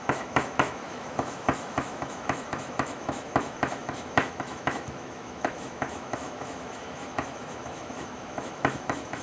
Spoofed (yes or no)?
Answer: yes